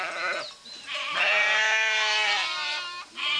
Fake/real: real